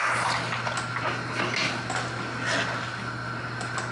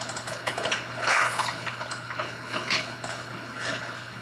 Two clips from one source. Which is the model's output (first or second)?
second